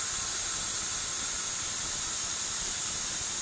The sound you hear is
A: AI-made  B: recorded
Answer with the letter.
A